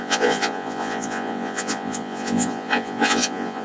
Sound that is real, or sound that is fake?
fake